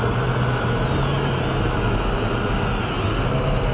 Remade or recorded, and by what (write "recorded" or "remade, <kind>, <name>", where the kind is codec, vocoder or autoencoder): recorded